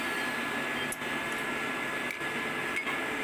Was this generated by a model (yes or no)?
no